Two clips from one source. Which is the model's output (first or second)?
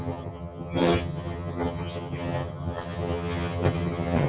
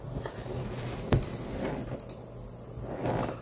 first